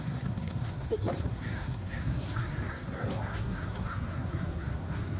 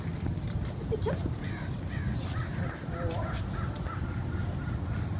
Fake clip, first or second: first